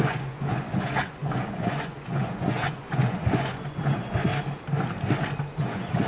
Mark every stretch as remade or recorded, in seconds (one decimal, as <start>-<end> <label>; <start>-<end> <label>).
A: 0.0-4.3 remade; 4.3-5.6 recorded; 5.6-6.1 remade